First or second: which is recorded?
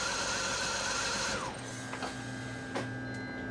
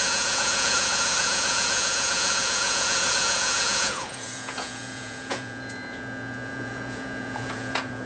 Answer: first